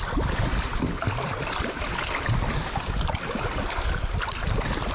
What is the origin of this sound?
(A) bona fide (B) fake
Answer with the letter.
A